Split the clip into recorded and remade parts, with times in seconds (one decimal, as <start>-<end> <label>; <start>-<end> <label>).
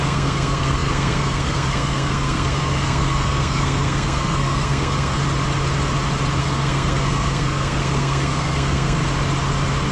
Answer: 0.0-5.2 remade; 5.2-6.4 recorded; 6.4-9.0 remade; 9.0-9.9 recorded